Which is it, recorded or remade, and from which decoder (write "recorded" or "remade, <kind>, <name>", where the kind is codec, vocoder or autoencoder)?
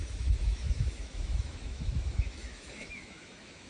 remade, autoencoder, DAC-VAE